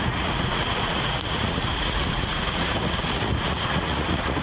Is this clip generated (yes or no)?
yes